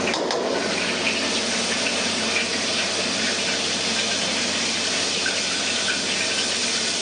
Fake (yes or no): no